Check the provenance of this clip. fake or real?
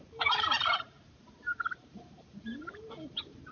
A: fake